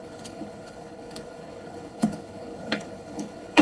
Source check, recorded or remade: remade